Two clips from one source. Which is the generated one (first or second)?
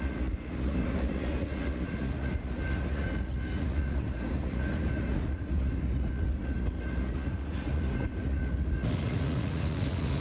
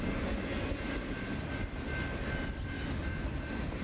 first